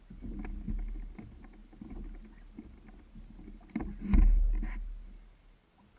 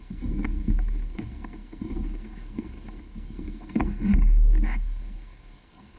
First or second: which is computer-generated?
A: second